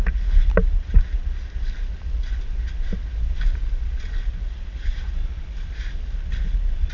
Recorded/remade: recorded